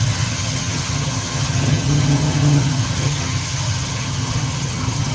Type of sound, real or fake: fake